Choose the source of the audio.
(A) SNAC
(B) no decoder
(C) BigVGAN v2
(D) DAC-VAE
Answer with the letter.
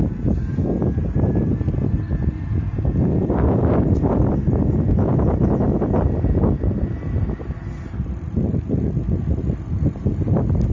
B